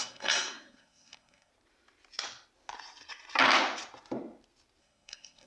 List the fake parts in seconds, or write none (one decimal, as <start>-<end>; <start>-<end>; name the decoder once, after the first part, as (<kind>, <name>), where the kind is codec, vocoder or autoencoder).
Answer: 0.0-1.5 (codec, SNAC); 4.8-5.5